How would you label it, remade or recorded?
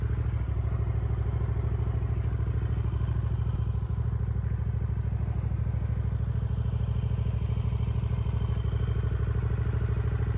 recorded